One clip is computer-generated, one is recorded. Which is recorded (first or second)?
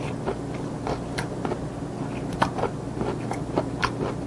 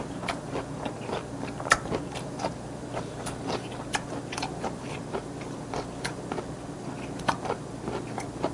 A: first